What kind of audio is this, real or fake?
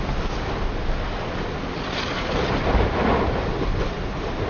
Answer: real